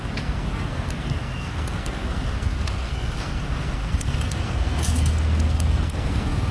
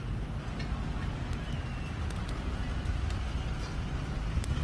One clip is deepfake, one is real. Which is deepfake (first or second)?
first